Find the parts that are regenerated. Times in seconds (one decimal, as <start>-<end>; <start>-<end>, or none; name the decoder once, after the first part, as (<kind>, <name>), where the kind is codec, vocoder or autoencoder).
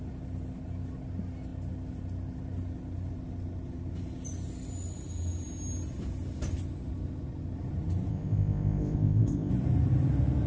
8.1-9.5 (codec, ZipCodec)